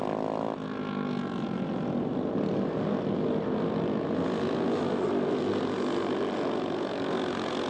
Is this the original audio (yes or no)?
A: yes